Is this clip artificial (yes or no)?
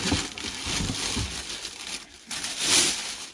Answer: no